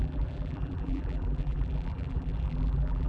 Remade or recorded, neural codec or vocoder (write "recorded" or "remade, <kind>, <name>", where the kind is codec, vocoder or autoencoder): remade, vocoder, BigVGAN v2